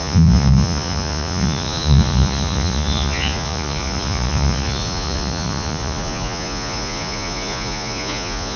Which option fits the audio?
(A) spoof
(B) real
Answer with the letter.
A